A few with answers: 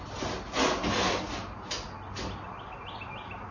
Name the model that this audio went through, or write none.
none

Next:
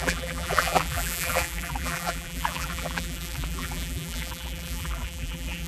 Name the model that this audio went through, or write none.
vocoder, BigVGAN v2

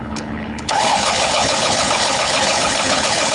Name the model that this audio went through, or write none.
codec, HILCodec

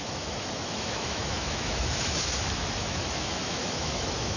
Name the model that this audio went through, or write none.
autoencoder, DAC-VAE